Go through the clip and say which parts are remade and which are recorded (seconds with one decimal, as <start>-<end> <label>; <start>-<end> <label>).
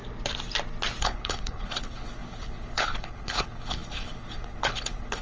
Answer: 0.0-1.0 recorded; 1.0-5.2 remade